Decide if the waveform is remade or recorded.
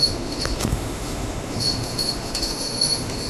remade